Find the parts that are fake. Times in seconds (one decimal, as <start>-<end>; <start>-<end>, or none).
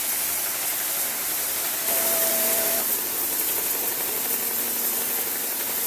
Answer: 0.7-4.2